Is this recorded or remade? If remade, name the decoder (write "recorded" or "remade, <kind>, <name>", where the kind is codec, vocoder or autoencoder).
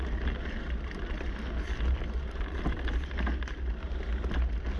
recorded